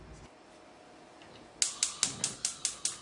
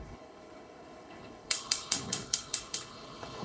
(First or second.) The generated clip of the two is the second